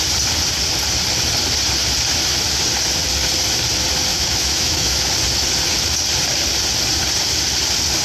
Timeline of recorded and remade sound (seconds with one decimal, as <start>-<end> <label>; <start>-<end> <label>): 0.0-4.1 recorded; 4.1-5.1 remade; 5.1-8.0 recorded